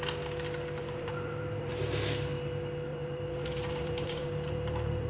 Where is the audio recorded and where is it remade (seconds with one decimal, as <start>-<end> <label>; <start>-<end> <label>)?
0.0-0.8 recorded; 0.8-1.7 remade; 1.7-2.9 recorded; 2.9-5.1 remade

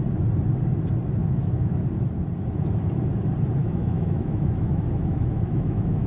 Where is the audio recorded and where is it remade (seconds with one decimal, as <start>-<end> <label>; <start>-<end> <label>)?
0.0-1.2 recorded; 1.2-1.8 remade; 1.8-3.6 recorded; 3.6-6.1 remade

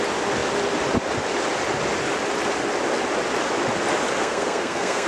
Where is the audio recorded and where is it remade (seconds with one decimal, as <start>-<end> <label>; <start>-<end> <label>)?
0.0-4.2 recorded; 4.2-5.1 remade

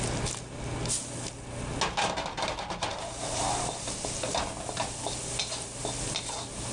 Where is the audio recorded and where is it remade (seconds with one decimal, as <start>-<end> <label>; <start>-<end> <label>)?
0.0-2.9 recorded; 2.9-3.5 remade; 3.5-6.7 recorded

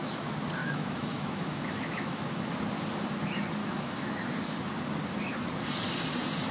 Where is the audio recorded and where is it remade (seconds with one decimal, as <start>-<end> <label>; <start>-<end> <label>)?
0.0-0.6 recorded; 0.6-2.5 remade; 2.5-3.6 recorded; 3.6-4.1 remade; 4.1-6.5 recorded

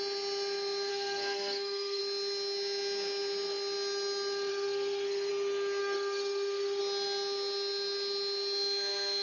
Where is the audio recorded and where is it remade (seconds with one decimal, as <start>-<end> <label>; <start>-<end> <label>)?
0.0-0.9 recorded; 0.9-2.0 remade; 2.0-4.5 recorded; 4.5-5.3 remade; 5.3-5.8 recorded; 5.8-6.8 remade; 6.8-9.2 recorded

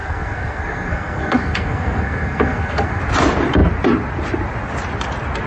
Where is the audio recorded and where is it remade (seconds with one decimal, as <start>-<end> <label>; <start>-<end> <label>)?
0.0-3.0 remade; 3.0-5.5 recorded

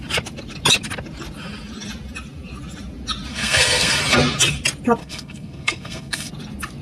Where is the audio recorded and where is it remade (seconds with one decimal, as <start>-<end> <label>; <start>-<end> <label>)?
0.0-3.3 recorded; 3.3-4.0 remade; 4.0-5.0 recorded; 5.0-6.3 remade; 6.3-6.8 recorded